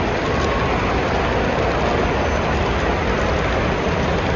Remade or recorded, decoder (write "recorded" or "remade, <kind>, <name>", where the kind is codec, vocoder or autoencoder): recorded